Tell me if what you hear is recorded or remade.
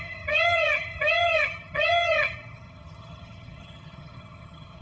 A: remade